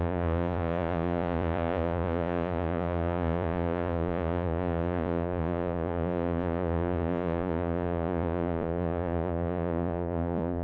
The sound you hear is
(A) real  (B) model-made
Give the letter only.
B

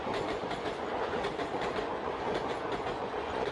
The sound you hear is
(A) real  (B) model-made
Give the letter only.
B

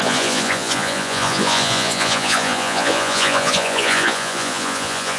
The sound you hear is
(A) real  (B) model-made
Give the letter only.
B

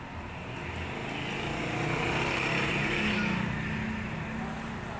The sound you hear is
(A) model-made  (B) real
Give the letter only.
B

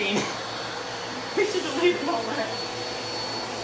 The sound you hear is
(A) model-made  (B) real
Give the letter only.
B